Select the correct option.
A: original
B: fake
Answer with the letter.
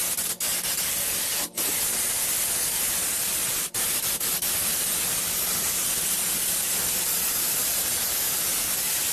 A